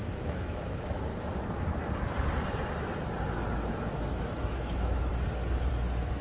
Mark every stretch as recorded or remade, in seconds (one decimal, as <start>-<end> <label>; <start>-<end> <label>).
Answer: 0.0-1.1 remade; 1.1-3.5 recorded; 3.5-5.1 remade; 5.1-5.7 recorded; 5.7-6.2 remade